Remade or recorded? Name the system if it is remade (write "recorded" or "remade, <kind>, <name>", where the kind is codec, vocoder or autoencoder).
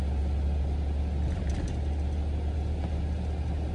recorded